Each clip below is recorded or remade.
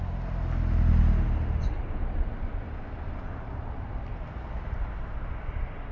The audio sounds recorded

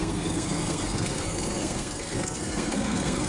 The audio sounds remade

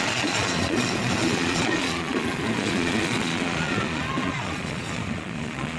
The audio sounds remade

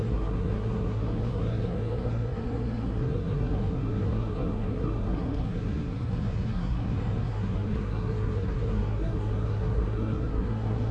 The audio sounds remade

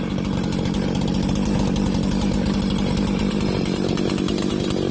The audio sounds recorded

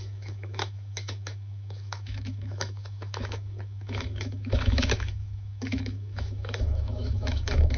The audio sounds remade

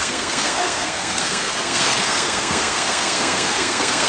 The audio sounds remade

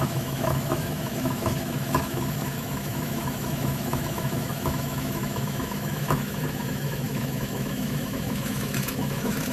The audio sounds remade